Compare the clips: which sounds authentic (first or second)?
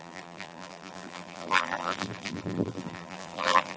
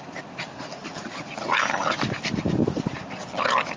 second